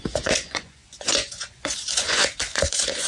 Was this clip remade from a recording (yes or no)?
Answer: yes